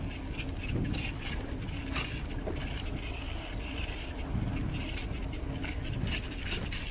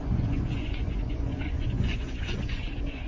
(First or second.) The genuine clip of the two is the first